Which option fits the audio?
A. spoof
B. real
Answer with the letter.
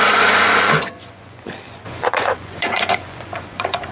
A